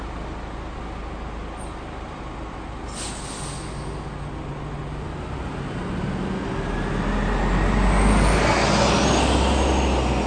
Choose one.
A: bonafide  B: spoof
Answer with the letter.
A